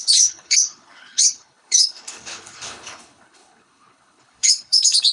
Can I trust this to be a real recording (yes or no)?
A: no